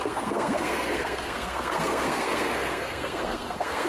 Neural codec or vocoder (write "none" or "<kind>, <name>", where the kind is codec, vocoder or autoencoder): codec, SNAC